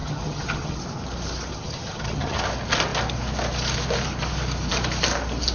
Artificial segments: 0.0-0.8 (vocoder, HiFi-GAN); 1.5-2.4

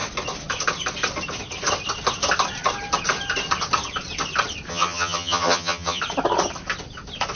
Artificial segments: 4.7-6.0 (vocoder, HiFi-GAN)

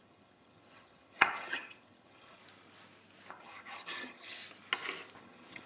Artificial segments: 0.0-2.4 (vocoder, HiFi-GAN); 3.3-4.4; 5.2-5.7

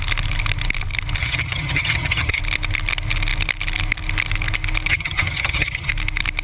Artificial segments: 1.2-2.4 (vocoder, HiFi-GAN); 4.9-5.9